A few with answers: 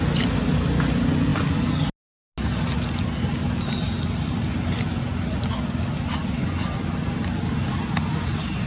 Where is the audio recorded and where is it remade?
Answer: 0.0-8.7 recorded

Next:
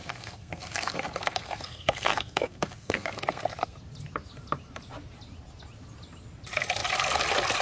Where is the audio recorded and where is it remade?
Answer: 0.0-3.8 remade; 3.8-7.6 recorded